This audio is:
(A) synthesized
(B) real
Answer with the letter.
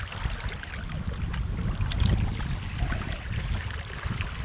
B